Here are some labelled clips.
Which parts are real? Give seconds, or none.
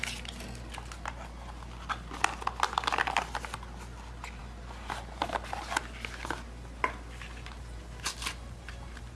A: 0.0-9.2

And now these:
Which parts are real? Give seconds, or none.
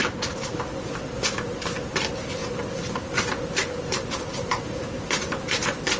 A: 0.0-2.4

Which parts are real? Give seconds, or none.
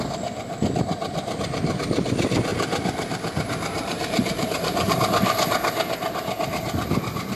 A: 0.0-2.5; 4.9-7.4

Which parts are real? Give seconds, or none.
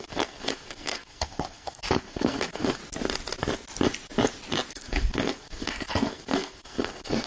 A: 2.8-4.7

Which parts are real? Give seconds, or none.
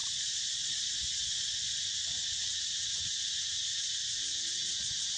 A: 1.8-5.2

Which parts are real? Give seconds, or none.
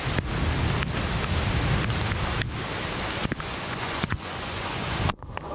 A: 0.0-3.2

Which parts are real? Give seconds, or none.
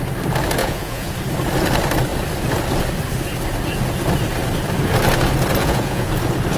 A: 0.0-0.6; 1.1-5.6; 6.1-6.6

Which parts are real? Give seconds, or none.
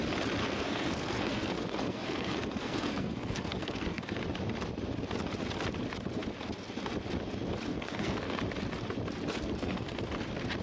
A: 0.0-0.4; 4.2-7.7; 8.4-9.4; 10.0-10.6